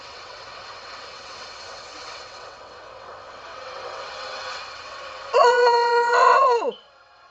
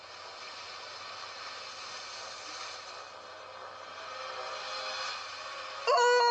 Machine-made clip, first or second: first